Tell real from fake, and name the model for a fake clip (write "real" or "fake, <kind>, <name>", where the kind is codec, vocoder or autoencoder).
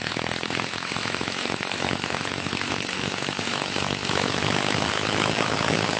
fake, autoencoder, DAC-VAE